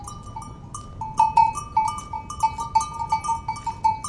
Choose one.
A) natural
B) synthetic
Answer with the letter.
A